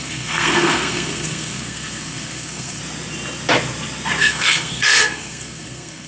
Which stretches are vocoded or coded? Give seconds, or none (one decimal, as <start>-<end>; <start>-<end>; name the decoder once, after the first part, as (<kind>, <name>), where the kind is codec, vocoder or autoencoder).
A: 0.0-2.8 (codec, SNAC); 4.2-6.1